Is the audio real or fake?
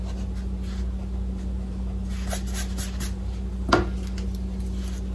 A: real